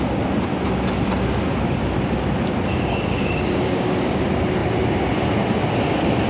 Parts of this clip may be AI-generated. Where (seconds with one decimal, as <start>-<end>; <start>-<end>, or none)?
2.7-4.0